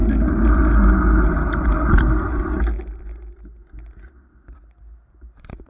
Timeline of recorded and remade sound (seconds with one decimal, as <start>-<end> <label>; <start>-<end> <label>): 0.0-5.7 recorded